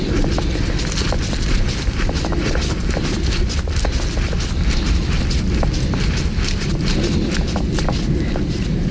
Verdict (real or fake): real